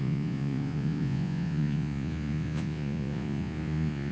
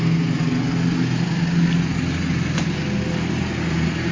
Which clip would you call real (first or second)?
second